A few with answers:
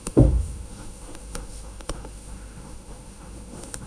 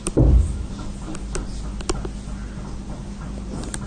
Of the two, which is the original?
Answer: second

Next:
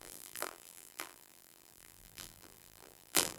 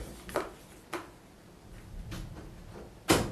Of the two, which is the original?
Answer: second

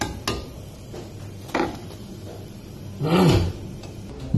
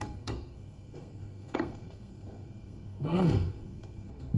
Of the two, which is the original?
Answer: first